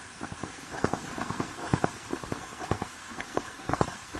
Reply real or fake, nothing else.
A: fake